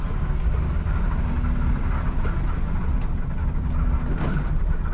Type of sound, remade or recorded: recorded